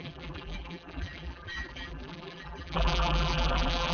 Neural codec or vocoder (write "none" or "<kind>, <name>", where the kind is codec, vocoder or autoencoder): vocoder, BigVGAN v2